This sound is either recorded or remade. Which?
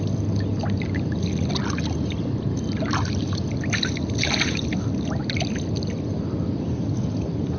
recorded